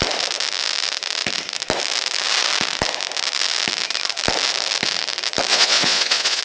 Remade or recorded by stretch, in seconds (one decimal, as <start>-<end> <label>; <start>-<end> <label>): 0.0-5.5 recorded; 5.5-6.4 remade